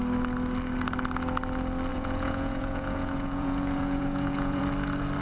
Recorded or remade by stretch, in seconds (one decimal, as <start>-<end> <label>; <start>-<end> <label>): 0.0-1.9 recorded; 1.9-4.6 remade; 4.6-5.2 recorded